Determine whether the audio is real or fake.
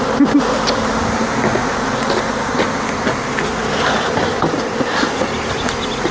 real